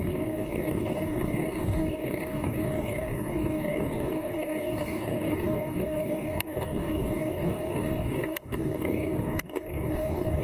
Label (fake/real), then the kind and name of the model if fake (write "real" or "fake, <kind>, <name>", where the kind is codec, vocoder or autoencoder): fake, codec, DAC